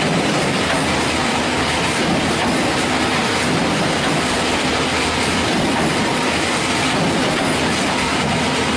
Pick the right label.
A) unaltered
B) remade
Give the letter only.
A